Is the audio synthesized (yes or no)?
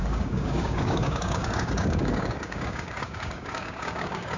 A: yes